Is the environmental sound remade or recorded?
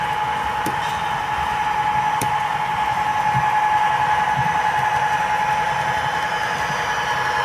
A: recorded